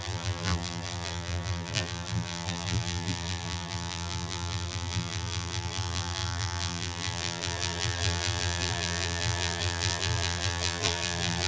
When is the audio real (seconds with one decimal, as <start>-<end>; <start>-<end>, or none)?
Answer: none